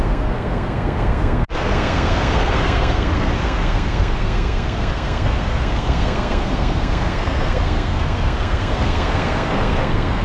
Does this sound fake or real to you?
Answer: fake